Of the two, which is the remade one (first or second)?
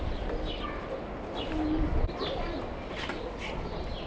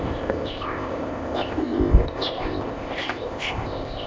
second